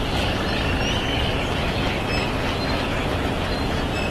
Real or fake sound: real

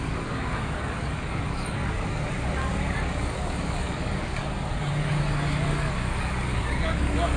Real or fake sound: fake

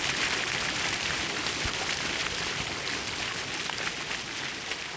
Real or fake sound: real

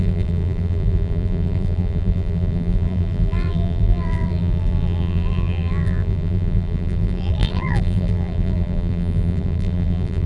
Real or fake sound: fake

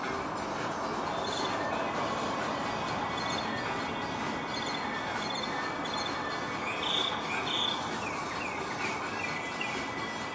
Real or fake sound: real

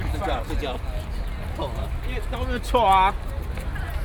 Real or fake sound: real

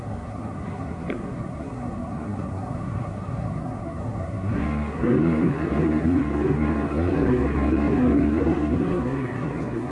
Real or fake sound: fake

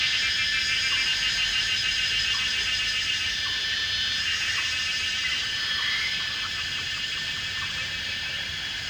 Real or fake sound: fake